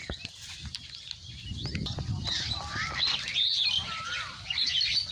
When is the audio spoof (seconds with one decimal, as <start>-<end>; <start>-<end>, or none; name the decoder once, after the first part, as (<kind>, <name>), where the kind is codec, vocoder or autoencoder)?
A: 0.7-5.1 (vocoder, BigVGAN v2)